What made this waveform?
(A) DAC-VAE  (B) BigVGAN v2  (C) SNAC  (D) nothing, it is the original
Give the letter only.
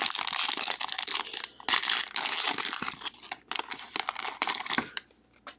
D